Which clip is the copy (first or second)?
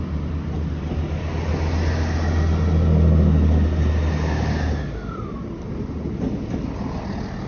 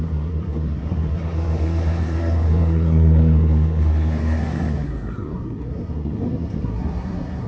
second